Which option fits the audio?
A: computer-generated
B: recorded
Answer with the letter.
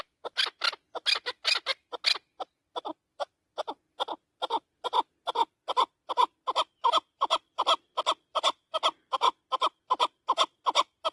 B